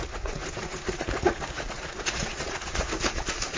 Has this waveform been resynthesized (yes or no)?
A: yes